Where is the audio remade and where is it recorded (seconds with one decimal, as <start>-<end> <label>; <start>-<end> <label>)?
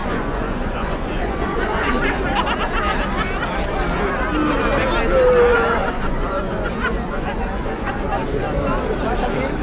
0.0-1.9 remade; 1.9-5.5 recorded; 5.5-7.9 remade; 7.9-9.6 recorded